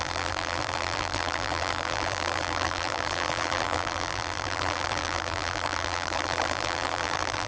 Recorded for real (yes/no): no